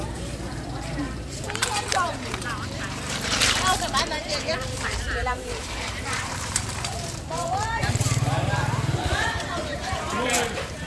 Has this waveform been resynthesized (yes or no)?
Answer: yes